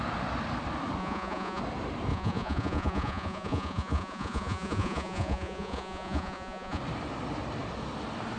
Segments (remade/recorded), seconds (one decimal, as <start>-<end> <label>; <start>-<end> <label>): 0.0-1.0 recorded; 1.0-1.6 remade; 1.6-2.1 recorded; 2.1-6.8 remade; 6.8-8.4 recorded